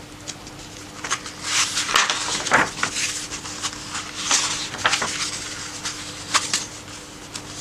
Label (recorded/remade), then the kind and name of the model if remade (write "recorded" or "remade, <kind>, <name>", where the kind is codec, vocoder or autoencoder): recorded